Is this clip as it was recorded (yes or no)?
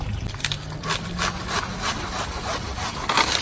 yes